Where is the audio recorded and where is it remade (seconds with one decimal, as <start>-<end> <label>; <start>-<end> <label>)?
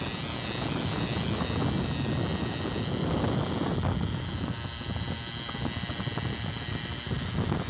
0.0-7.7 recorded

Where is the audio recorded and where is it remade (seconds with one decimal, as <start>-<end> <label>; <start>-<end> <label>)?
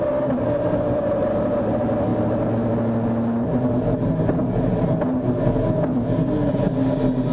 0.0-7.3 recorded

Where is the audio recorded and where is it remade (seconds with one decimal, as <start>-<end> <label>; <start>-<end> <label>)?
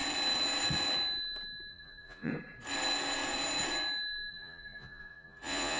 0.0-1.7 recorded; 1.7-2.3 remade; 2.3-4.3 recorded; 4.3-5.8 remade